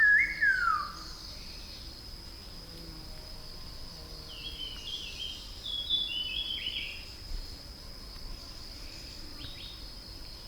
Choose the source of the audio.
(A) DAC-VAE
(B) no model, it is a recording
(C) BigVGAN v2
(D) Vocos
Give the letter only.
B